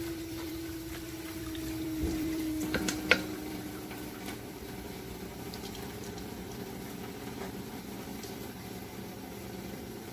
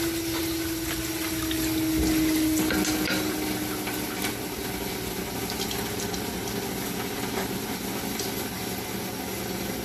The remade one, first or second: first